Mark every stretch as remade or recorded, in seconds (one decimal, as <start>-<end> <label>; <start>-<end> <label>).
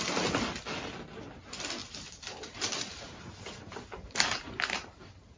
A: 0.0-1.8 recorded; 1.8-5.0 remade; 5.0-5.4 recorded